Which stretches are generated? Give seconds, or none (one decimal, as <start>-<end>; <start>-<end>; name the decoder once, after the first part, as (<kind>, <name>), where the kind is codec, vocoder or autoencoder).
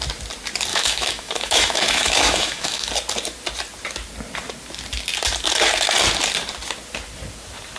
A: 0.7-2.9 (autoencoder, DAC-VAE)